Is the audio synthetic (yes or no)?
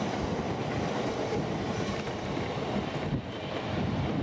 no